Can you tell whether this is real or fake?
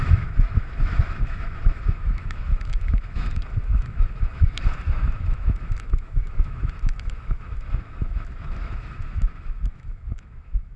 fake